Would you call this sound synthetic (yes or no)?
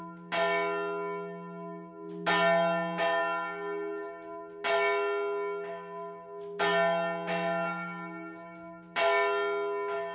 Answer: no